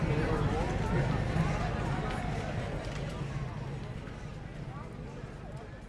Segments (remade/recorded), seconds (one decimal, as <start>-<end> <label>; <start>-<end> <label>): 0.0-5.9 recorded